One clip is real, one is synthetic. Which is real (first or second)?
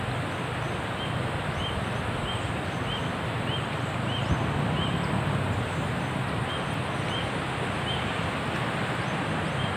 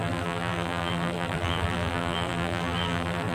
first